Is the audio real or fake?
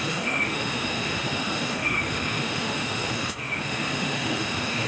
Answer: fake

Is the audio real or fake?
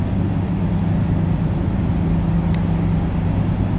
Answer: real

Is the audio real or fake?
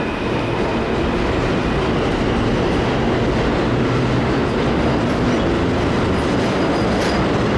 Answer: real